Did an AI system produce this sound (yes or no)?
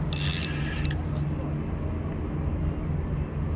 no